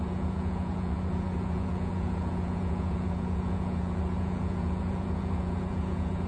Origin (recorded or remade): remade